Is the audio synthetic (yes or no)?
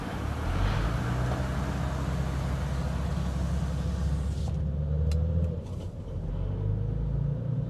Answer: no